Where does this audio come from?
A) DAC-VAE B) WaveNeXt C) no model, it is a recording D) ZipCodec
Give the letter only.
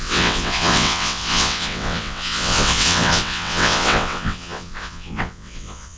B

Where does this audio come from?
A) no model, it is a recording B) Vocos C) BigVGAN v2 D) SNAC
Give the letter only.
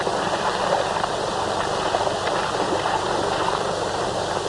A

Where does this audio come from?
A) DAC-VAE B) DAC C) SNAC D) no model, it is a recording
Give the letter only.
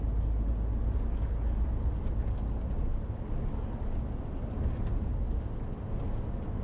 D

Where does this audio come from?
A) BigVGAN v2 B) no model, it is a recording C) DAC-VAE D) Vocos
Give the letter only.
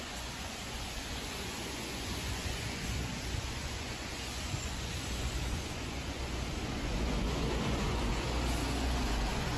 D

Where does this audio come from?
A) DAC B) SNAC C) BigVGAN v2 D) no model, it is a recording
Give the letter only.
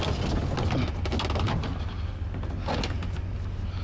D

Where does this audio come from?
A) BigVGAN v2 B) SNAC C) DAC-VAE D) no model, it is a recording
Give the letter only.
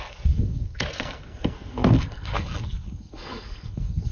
B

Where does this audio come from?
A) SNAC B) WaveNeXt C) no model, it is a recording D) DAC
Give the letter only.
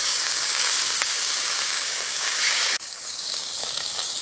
D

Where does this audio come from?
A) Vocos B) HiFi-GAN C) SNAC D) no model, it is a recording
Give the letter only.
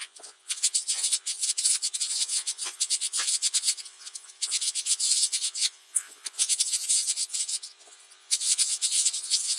A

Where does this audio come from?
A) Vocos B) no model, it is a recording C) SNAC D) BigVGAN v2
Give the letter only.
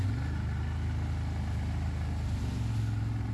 B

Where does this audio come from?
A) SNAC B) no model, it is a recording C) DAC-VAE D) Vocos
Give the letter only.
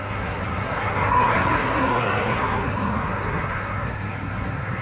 A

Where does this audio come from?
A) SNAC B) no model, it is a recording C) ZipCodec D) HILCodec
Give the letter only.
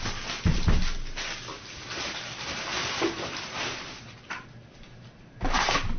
B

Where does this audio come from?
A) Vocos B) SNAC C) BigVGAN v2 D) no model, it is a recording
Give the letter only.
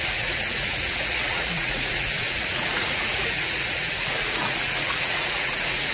A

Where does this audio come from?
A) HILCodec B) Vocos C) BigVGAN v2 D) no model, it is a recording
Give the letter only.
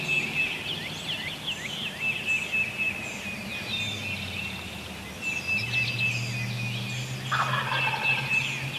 D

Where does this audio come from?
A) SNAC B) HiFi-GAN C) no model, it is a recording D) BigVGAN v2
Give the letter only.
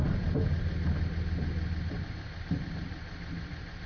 C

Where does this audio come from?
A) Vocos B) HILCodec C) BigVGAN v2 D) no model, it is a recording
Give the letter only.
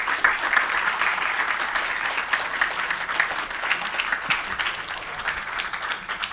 D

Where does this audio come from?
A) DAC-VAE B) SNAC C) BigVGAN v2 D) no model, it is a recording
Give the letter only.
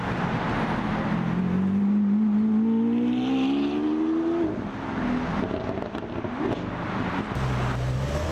D